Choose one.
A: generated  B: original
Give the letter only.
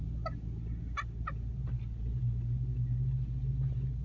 B